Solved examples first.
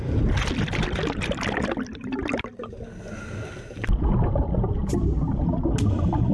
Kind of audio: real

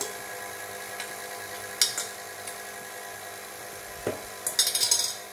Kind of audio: real